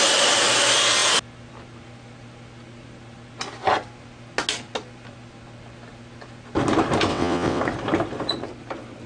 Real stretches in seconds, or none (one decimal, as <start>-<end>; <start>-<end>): 0.0-7.1; 7.6-9.1